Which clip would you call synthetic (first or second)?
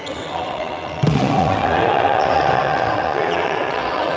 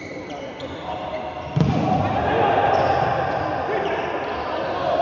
first